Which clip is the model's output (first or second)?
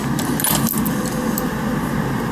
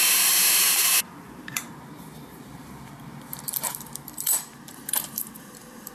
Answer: second